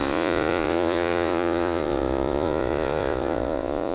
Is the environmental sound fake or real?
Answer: fake